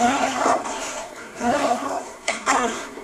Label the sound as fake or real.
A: fake